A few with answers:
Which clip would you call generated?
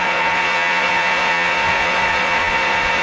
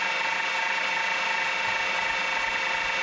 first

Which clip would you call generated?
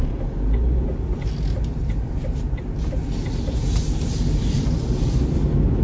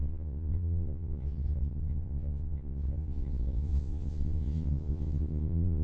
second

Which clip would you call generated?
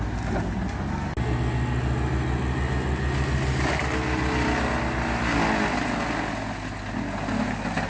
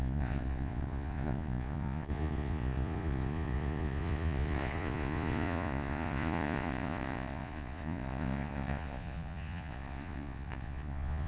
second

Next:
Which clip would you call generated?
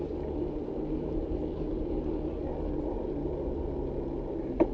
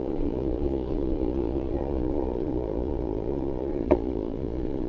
second